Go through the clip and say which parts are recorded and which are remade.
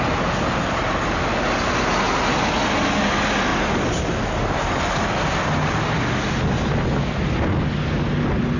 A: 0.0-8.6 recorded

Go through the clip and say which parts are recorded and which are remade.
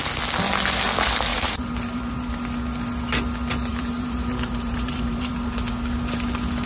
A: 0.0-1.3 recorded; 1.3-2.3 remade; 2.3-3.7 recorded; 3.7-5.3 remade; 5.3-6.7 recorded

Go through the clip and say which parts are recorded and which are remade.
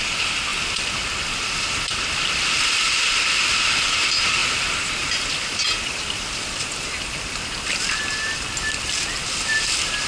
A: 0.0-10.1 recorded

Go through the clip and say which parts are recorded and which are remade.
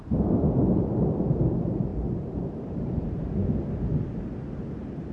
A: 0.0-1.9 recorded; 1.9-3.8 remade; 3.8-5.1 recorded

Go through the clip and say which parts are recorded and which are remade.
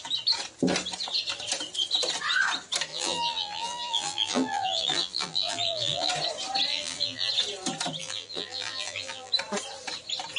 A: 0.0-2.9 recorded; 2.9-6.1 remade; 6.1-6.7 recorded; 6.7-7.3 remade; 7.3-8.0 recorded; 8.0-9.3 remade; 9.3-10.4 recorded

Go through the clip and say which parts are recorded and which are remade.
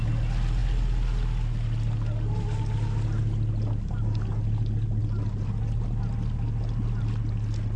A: 0.0-7.8 recorded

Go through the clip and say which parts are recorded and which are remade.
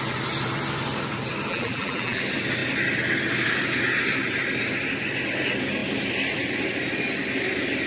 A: 0.0-1.5 recorded; 1.5-2.2 remade; 2.2-7.9 recorded